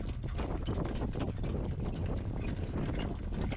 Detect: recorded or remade recorded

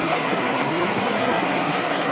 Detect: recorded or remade remade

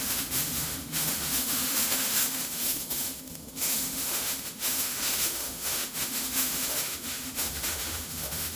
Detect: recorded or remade remade